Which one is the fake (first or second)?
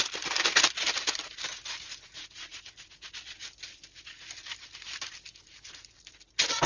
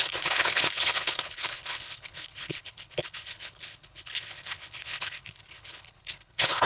second